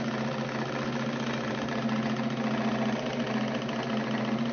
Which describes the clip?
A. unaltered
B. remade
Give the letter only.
A